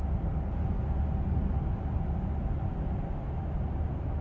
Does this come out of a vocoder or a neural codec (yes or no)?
no